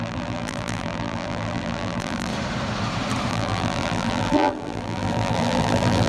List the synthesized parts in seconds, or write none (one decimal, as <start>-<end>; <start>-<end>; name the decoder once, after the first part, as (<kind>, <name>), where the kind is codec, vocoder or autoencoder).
0.0-2.3 (vocoder, BigVGAN v2); 3.3-6.1